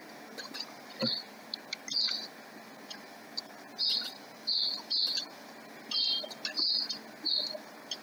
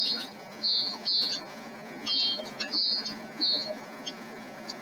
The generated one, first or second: second